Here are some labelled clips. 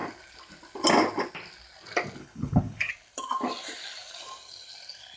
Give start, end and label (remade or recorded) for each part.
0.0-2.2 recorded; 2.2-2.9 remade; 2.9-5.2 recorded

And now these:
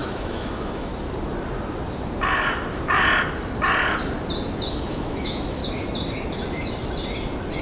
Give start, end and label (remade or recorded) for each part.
0.0-0.9 remade; 0.9-4.7 recorded; 4.7-5.6 remade; 5.6-7.6 recorded

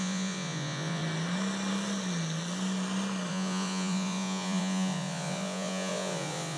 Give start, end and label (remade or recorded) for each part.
0.0-1.0 remade; 1.0-3.3 recorded; 3.3-6.6 remade